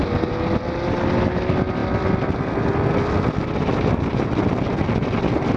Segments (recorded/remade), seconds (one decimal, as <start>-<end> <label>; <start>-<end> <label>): 0.0-5.6 recorded